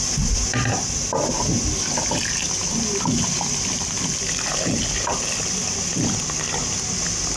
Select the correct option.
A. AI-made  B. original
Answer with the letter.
B